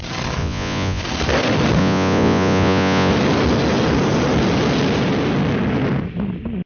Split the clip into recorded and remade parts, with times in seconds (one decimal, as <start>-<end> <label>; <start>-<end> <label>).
0.0-0.4 recorded; 0.4-1.0 remade; 1.0-1.8 recorded; 1.8-3.1 remade; 3.1-6.7 recorded